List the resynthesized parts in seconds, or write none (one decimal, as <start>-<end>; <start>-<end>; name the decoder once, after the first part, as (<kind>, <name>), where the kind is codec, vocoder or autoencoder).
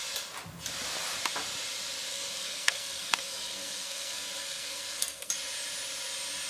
2.1-5.3 (codec, SNAC)